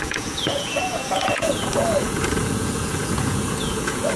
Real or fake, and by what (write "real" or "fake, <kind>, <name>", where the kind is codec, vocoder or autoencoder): fake, vocoder, Vocos